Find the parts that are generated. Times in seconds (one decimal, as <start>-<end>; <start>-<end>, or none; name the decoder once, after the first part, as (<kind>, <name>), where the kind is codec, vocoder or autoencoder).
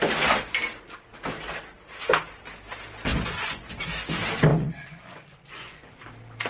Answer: 3.1-3.9 (vocoder, Vocos); 4.5-6.0